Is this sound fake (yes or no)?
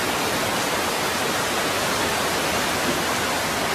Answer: no